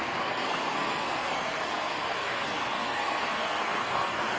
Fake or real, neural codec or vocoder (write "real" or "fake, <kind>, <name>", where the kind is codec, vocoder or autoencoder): fake, codec, SNAC